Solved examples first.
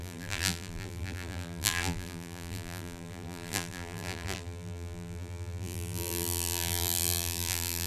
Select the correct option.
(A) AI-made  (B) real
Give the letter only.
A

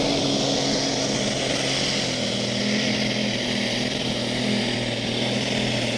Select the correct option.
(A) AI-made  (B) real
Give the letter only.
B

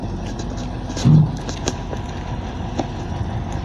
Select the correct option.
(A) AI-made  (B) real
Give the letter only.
B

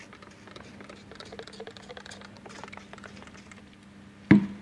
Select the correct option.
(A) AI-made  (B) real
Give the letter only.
B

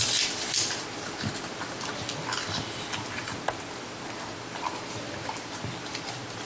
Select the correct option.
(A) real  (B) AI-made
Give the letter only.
B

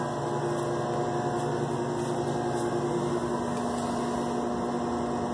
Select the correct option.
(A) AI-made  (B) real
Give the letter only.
B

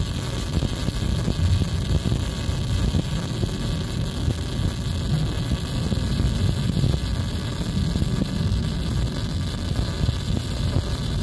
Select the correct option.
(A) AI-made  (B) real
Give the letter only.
B